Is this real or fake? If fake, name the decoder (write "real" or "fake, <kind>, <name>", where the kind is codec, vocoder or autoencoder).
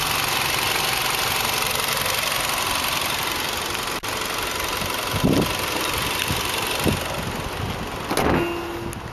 real